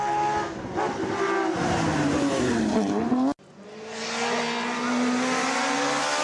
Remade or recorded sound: recorded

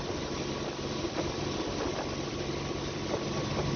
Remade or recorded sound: recorded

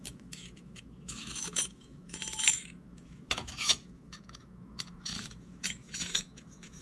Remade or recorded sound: remade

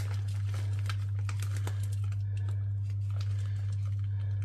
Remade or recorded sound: recorded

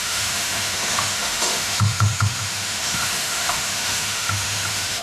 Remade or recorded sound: remade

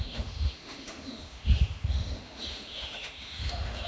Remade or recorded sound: remade